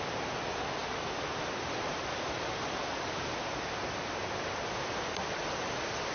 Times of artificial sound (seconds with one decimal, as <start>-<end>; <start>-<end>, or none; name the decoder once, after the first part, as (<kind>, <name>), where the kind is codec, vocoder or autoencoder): none